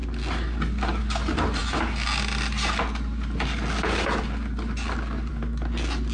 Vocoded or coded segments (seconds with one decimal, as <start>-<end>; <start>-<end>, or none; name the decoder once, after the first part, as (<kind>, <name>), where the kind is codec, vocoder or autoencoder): none